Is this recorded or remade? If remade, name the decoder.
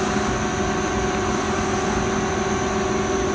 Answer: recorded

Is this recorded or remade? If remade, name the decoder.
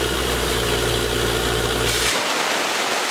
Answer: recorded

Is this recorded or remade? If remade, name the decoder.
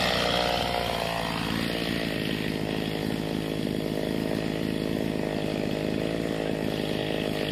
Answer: recorded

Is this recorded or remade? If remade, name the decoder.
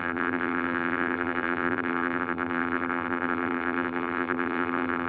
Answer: remade, vocoder, BigVGAN v2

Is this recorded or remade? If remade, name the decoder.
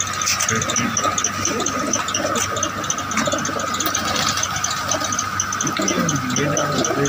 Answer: recorded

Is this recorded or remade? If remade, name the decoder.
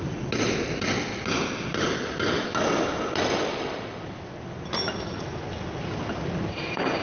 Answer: recorded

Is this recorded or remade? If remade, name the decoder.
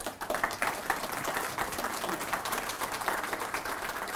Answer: remade, vocoder, BigVGAN v2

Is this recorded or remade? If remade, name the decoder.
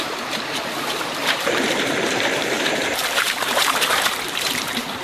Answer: remade, vocoder, BigVGAN v2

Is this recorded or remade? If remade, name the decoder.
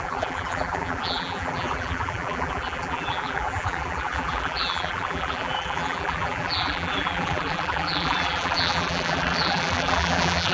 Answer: remade, vocoder, BigVGAN v2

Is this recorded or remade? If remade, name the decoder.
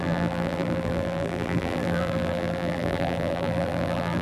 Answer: remade, vocoder, BigVGAN v2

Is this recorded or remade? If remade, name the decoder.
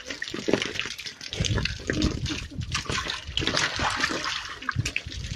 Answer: recorded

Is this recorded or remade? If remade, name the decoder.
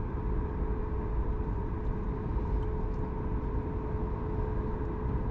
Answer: recorded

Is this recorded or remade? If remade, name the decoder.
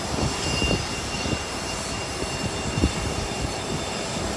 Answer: remade, vocoder, BigVGAN v2